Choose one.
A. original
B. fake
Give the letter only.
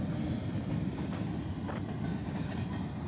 A